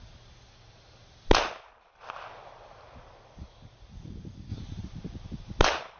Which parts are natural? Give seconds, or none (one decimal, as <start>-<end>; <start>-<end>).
0.0-6.0